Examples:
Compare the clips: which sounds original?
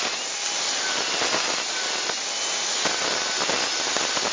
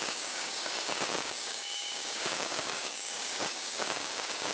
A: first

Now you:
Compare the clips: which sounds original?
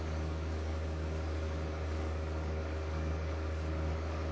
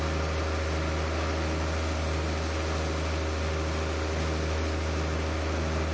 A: second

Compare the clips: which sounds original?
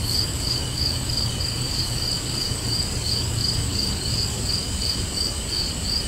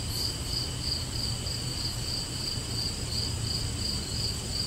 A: second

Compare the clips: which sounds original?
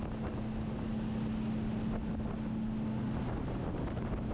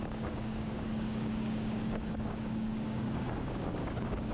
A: first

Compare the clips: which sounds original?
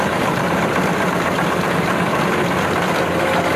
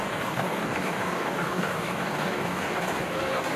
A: first